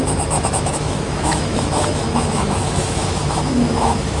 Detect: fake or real fake